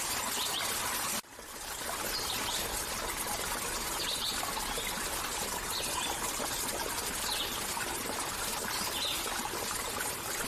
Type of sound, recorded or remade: recorded